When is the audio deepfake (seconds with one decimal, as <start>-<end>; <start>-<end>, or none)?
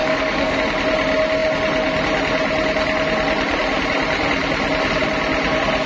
0.0-0.6